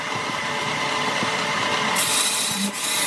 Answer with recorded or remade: remade